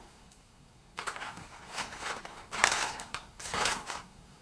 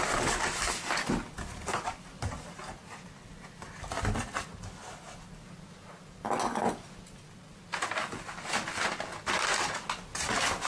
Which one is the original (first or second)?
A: second